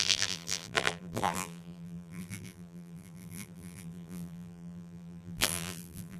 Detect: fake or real fake